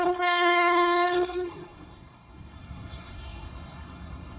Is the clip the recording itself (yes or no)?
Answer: no